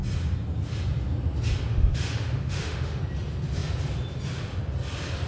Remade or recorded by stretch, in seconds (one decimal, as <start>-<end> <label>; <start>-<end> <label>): 0.0-1.7 recorded; 1.7-3.0 remade; 3.0-5.3 recorded